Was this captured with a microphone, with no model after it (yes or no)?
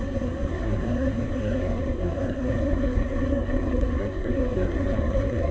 no